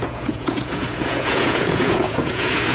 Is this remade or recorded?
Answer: remade